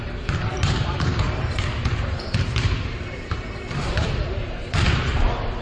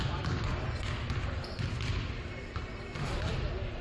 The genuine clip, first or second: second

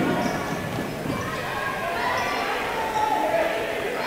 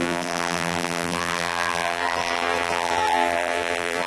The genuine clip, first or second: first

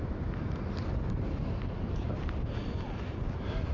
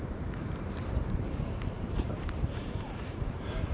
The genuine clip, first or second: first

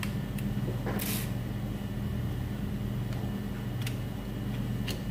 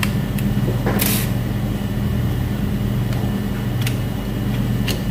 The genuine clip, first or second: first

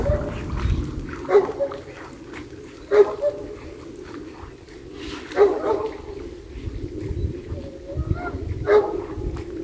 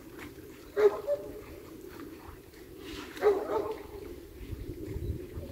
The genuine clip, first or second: first